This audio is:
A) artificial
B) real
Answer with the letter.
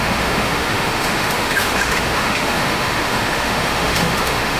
A